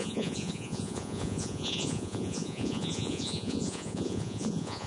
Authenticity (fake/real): fake